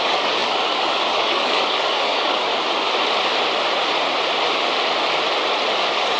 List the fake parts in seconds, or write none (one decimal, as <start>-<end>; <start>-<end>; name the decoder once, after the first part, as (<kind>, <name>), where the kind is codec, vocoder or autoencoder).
0.0-2.5 (codec, DAC); 5.7-6.2